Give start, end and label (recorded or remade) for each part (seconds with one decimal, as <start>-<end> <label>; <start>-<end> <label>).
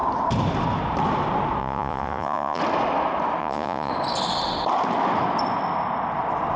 0.0-1.6 recorded; 1.6-2.6 remade; 2.6-3.4 recorded; 3.4-3.9 remade; 3.9-6.6 recorded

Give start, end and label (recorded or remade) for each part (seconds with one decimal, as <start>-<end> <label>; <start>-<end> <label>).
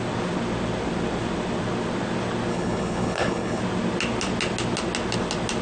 0.0-2.5 recorded; 2.5-3.6 remade; 3.6-5.6 recorded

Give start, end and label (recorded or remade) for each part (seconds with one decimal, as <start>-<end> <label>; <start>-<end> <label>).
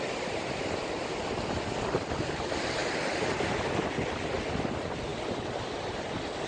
0.0-6.5 recorded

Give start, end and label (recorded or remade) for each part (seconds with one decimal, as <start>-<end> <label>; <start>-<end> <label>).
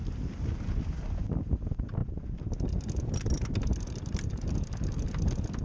0.0-5.6 recorded